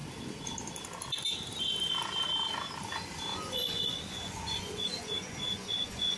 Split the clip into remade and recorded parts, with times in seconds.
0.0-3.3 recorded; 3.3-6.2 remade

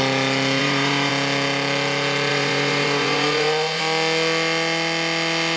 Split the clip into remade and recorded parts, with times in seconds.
0.0-0.6 recorded; 0.6-1.1 remade; 1.1-2.3 recorded; 2.3-3.8 remade; 3.8-5.6 recorded

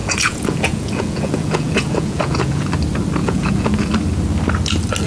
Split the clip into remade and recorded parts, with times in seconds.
0.0-2.7 remade; 2.7-3.2 recorded; 3.2-3.9 remade; 3.9-5.1 recorded

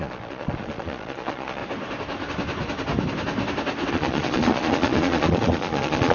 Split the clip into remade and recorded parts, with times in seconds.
0.0-1.6 remade; 1.6-3.9 recorded; 3.9-6.1 remade

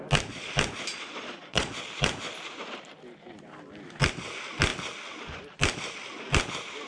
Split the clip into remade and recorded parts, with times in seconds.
0.0-0.9 recorded; 0.9-1.7 remade; 1.7-6.9 recorded